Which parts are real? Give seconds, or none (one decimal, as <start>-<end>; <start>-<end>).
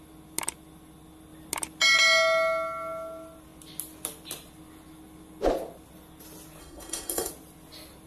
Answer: 0.0-6.6; 7.3-8.1